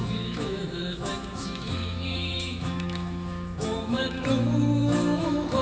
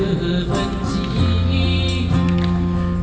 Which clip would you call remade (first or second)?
first